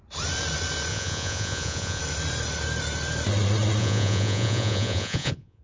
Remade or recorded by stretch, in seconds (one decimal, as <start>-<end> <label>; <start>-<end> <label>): 0.0-0.9 recorded; 0.9-2.0 remade; 2.0-3.8 recorded; 3.8-5.6 remade